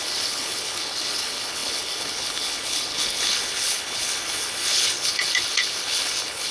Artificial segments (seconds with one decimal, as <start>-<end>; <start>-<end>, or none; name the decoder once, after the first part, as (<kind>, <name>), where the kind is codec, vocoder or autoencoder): 0.0-6.5 (codec, HILCodec)